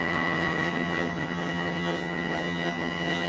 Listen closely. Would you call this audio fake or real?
fake